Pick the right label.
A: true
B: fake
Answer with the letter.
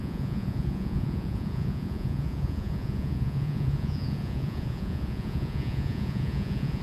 B